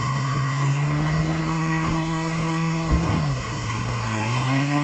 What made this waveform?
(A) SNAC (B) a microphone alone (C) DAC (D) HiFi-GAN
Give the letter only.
A